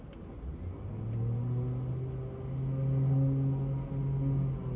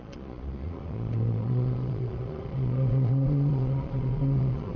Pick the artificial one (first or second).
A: second